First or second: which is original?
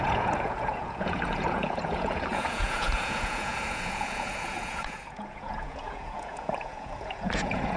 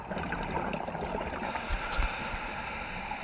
second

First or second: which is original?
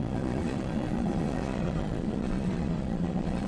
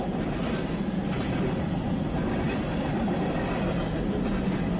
second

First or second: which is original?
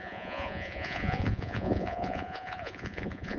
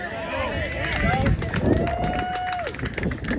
second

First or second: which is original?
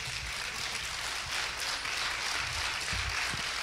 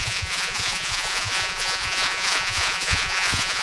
first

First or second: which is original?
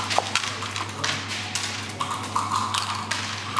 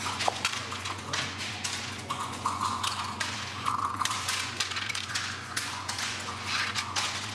first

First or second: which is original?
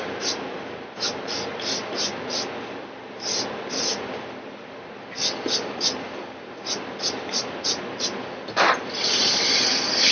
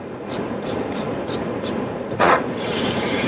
first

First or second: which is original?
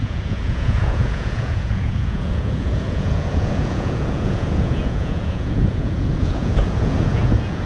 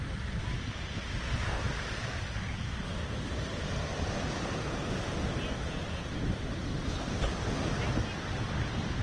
second